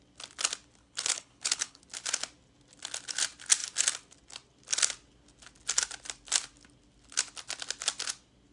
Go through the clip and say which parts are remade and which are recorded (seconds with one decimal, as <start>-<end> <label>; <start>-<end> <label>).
0.0-0.8 recorded; 0.8-1.8 remade; 1.8-8.5 recorded